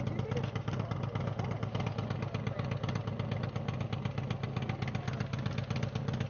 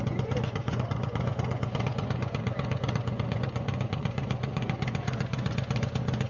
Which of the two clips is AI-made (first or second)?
second